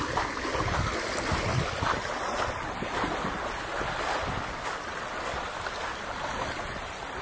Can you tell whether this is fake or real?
real